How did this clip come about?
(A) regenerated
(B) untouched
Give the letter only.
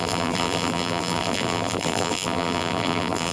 A